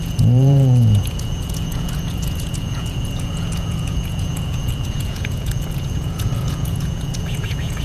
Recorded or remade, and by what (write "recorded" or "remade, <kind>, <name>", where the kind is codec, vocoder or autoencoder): remade, vocoder, Vocos